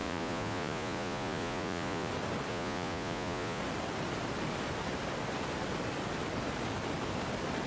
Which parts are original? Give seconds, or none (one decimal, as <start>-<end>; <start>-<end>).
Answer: 2.1-2.5; 3.6-7.7